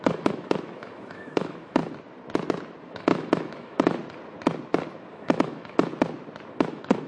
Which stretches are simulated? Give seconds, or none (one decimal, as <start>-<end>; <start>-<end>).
0.0-1.8; 2.9-4.0; 5.1-5.9; 6.5-7.1